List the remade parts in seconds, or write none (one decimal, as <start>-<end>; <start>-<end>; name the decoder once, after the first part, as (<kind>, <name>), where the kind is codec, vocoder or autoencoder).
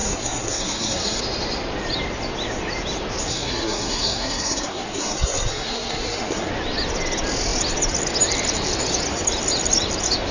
0.0-1.2 (codec, SNAC); 3.3-6.5